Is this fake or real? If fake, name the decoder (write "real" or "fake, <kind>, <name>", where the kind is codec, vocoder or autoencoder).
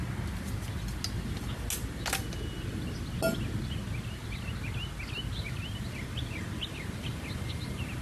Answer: real